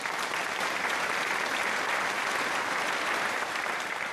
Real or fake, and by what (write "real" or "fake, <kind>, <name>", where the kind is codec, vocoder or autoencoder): fake, vocoder, BigVGAN v2